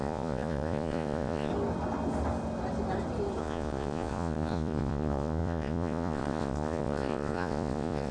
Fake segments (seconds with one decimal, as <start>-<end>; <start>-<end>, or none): 0.0-1.5; 3.4-8.1